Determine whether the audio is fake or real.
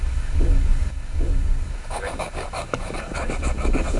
fake